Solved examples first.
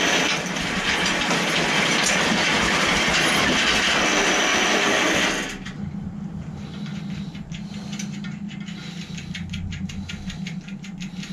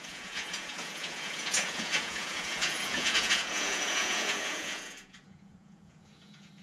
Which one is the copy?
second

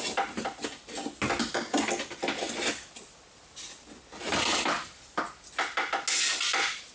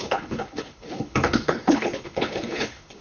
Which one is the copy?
second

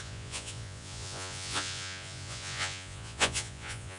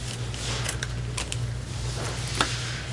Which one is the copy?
first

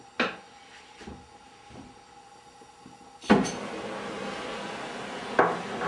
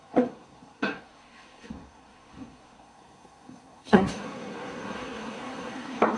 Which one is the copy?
second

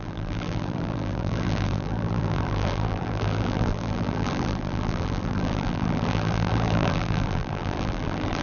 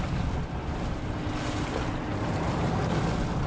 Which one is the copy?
first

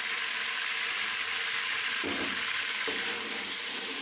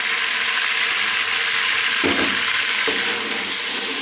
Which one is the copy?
first